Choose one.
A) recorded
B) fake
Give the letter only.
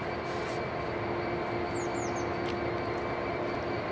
A